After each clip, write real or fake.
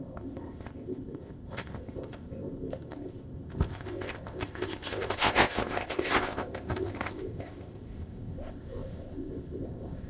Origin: fake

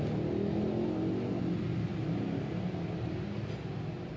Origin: real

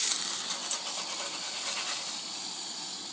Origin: real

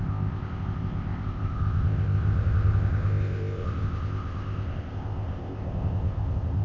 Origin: fake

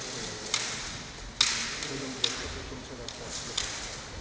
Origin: real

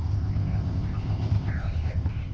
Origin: fake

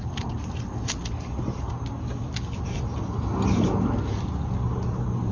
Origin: real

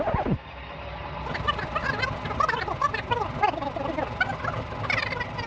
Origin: real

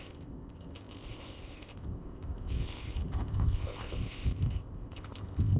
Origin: fake